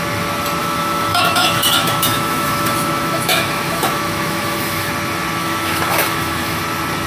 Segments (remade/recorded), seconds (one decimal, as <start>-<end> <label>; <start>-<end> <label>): 0.0-0.6 recorded; 0.6-4.9 remade; 4.9-5.4 recorded; 5.4-6.6 remade; 6.6-7.1 recorded